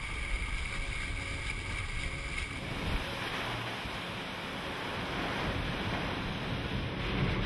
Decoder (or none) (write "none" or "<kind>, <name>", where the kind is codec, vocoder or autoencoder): none